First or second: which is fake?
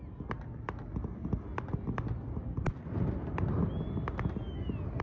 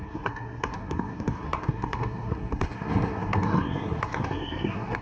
second